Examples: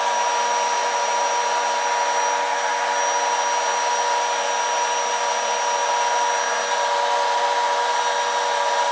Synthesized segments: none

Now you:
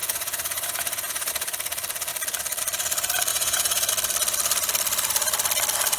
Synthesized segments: 0.0-1.3; 3.3-3.9